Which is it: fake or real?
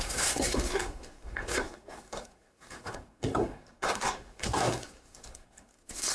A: fake